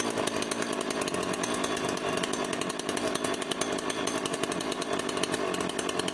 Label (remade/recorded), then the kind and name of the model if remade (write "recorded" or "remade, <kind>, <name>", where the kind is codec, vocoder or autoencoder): recorded